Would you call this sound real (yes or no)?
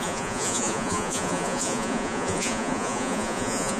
no